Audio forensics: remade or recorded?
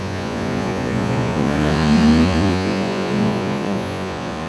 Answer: remade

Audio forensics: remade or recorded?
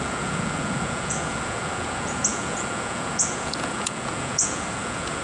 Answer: remade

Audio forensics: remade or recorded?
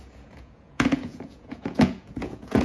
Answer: remade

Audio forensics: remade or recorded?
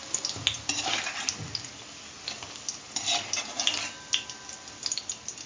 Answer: recorded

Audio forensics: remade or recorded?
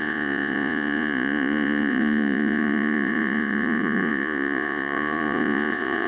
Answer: remade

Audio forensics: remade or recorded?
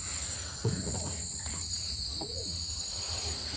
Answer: remade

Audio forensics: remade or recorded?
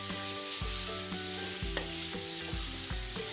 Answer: recorded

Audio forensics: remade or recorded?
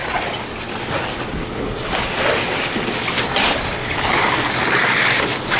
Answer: recorded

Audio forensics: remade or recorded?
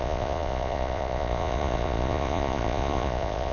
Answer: remade